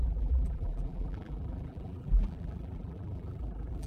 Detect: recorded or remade remade